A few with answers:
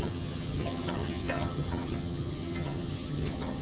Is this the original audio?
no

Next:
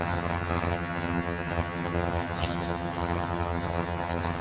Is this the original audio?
no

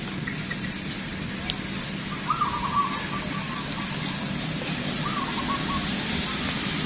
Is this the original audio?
yes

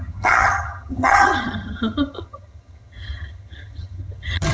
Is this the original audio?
no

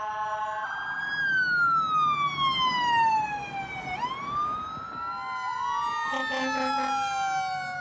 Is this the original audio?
yes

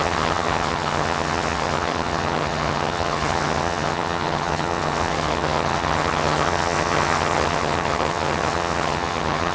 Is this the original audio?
no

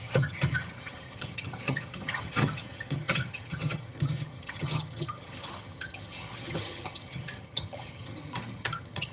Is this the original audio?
no